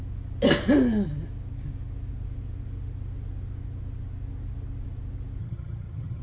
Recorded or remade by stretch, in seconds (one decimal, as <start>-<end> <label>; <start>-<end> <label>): 0.0-5.4 recorded; 5.4-6.2 remade